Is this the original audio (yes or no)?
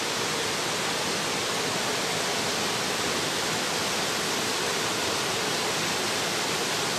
yes